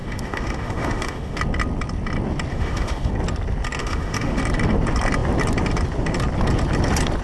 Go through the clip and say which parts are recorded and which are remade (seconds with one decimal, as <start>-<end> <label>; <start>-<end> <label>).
0.0-1.4 remade; 1.4-2.5 recorded; 2.5-3.1 remade; 3.1-3.8 recorded; 3.8-4.4 remade; 4.4-7.2 recorded